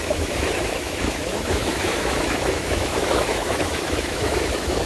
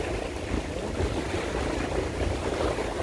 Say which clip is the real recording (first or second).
second